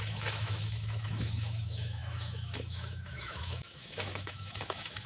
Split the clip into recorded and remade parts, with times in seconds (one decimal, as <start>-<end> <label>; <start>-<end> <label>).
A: 0.0-5.1 remade